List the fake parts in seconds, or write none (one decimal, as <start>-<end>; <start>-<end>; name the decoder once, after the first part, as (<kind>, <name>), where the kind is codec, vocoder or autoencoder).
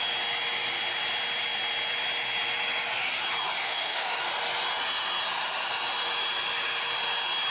3.6-4.2 (autoencoder, DAC-VAE)